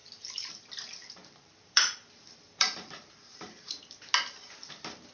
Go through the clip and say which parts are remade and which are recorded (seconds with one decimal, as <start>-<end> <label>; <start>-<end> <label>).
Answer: 0.0-0.5 remade; 0.5-1.0 recorded; 1.0-4.1 remade; 4.1-5.1 recorded